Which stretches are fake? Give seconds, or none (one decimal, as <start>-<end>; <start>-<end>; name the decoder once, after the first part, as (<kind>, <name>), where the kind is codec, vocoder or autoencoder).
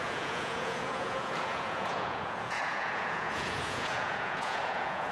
0.0-5.1 (vocoder, Vocos)